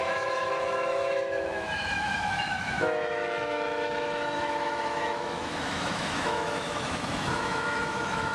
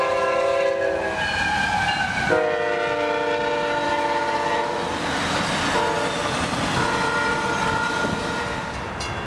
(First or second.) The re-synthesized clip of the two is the first